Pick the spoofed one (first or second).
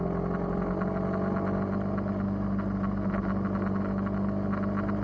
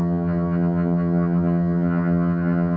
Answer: second